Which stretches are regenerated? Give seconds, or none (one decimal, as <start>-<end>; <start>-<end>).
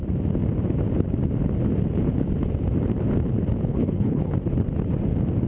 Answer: 3.7-4.3